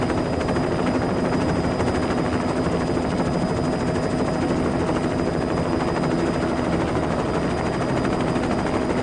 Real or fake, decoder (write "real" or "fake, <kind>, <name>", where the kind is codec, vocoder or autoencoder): real